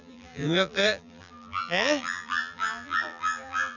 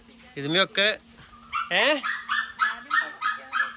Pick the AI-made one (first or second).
first